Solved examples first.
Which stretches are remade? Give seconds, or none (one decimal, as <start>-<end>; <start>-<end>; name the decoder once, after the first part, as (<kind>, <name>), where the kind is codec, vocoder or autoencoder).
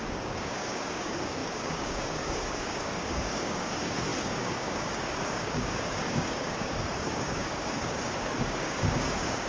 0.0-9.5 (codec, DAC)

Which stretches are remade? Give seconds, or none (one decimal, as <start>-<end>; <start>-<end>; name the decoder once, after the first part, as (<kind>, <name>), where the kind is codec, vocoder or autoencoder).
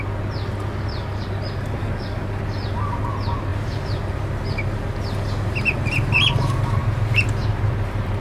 1.8-2.4 (codec, DAC)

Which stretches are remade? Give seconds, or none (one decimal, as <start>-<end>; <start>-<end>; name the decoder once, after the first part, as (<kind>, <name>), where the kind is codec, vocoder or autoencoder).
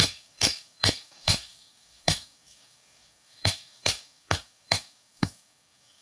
0.0-6.0 (codec, DAC)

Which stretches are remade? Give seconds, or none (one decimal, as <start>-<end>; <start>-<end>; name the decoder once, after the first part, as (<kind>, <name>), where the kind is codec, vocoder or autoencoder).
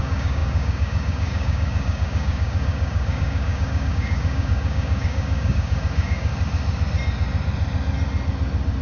0.0-6.3 (codec, DAC)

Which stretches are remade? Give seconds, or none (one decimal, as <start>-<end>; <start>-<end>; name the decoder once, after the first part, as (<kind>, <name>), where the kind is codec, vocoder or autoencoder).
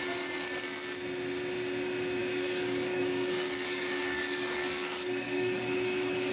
2.2-6.3 (codec, DAC)